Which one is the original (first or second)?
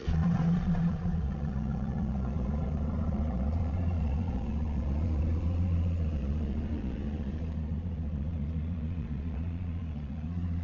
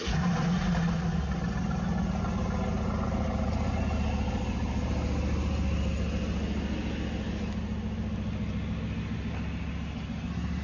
second